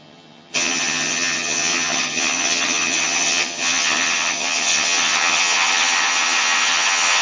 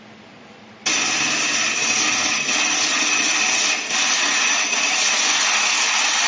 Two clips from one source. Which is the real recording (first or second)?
second